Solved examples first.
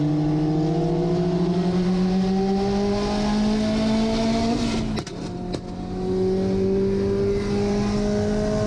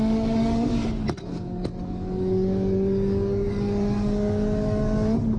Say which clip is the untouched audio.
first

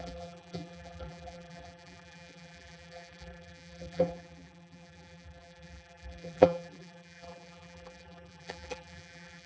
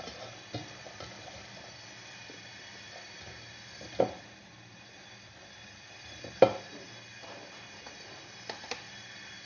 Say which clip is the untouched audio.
second